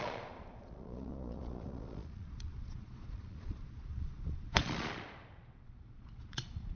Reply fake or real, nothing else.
fake